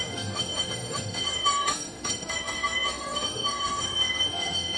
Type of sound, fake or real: fake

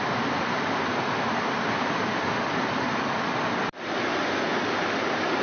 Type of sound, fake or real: real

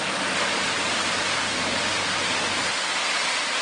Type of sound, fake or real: real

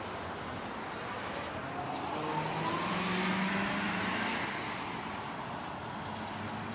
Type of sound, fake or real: real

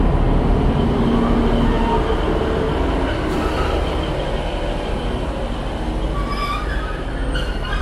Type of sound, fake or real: real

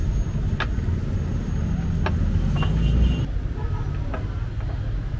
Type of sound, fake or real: real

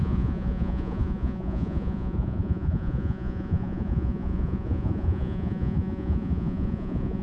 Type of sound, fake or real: fake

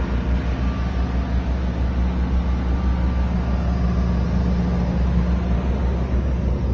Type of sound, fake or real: real